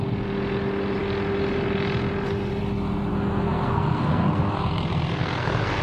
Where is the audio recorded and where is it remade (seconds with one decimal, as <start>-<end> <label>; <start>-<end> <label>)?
0.0-3.1 recorded; 3.1-5.8 remade